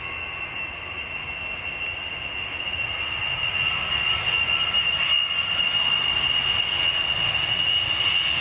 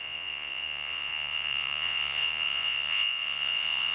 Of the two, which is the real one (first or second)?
first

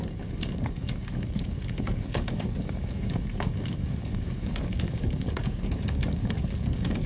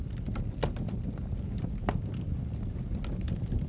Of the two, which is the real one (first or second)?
second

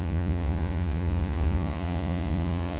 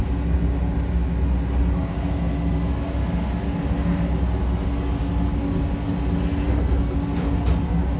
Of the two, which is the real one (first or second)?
second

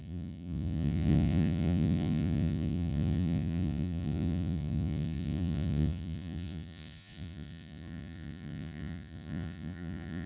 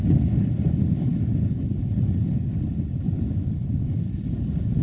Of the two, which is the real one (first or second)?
second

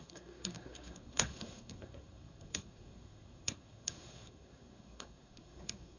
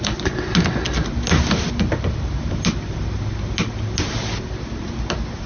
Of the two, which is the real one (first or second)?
second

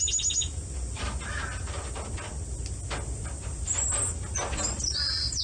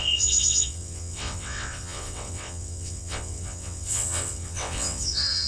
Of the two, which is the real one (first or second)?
first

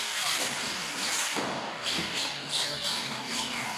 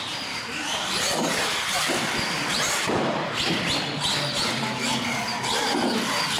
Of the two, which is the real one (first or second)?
second